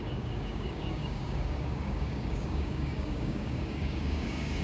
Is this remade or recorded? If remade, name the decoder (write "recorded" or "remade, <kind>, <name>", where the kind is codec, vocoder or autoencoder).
remade, codec, DAC